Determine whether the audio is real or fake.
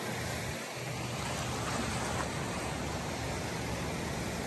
real